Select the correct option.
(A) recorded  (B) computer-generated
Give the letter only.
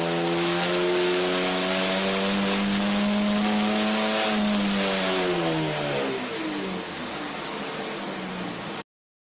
A